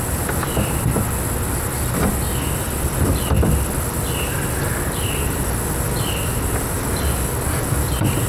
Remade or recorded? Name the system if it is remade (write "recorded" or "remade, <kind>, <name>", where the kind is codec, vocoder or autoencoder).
recorded